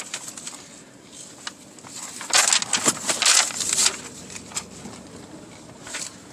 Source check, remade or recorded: recorded